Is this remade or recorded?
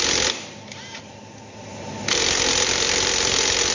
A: recorded